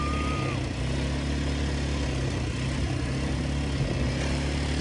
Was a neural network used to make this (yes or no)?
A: no